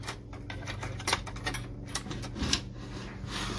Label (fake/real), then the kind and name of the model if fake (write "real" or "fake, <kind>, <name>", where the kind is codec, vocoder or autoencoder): real